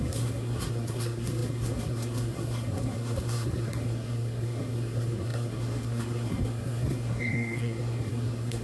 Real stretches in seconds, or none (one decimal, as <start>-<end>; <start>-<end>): none